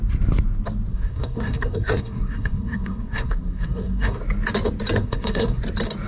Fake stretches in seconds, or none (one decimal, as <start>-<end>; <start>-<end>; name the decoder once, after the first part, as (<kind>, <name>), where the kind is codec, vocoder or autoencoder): 0.9-4.2 (codec, SNAC); 5.0-5.6